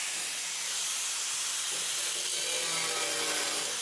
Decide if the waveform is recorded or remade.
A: recorded